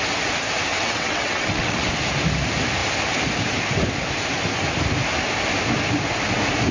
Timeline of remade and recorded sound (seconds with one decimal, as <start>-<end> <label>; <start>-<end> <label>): 0.0-0.7 recorded; 0.7-1.9 remade; 1.9-6.7 recorded